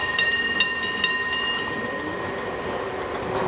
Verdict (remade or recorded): recorded